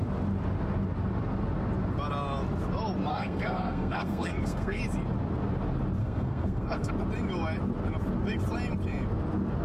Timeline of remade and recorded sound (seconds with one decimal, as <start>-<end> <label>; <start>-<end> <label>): 0.0-3.1 recorded; 3.1-4.8 remade; 4.8-6.0 recorded; 6.0-6.9 remade; 6.9-9.6 recorded